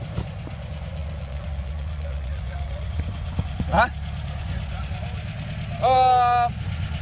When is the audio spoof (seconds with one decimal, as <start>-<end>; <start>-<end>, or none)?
0.0-3.7; 4.4-5.0; 6.5-7.0